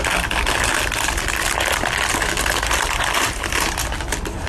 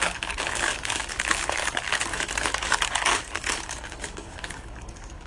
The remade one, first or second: second